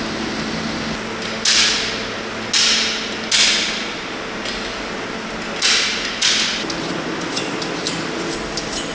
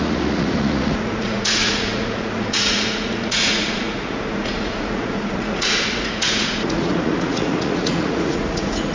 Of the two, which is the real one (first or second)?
first